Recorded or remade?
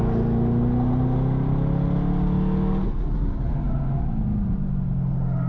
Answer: recorded